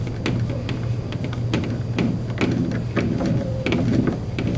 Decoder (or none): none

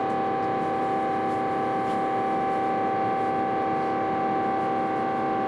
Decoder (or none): none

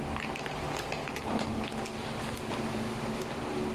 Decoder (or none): none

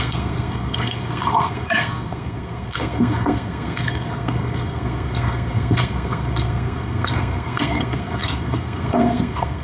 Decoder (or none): codec, SNAC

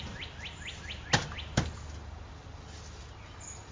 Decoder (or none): none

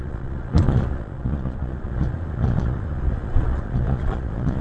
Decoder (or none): vocoder, Vocos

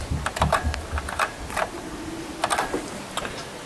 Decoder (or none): none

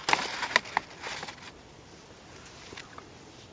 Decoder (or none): none